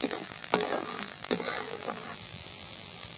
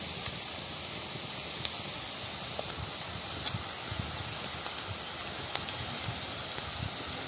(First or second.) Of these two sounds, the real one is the second